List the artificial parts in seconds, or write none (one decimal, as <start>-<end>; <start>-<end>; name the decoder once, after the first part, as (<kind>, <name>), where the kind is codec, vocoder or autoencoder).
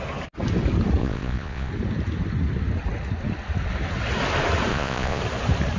1.0-1.7 (vocoder, Vocos); 4.7-5.2